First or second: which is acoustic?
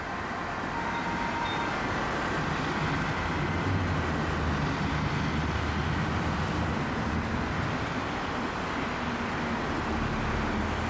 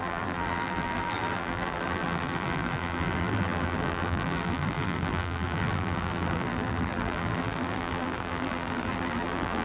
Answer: first